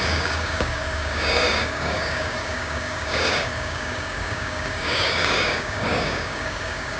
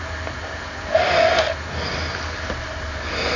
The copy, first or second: first